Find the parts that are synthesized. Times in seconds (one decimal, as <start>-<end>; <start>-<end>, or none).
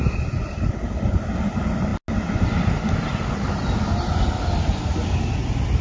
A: none